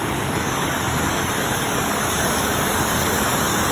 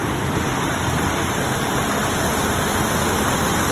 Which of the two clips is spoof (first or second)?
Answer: first